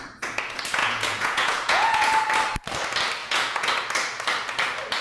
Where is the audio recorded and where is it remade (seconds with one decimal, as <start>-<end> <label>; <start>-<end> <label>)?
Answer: 0.0-0.8 recorded; 0.8-2.1 remade; 2.1-3.2 recorded; 3.2-3.7 remade; 3.7-5.0 recorded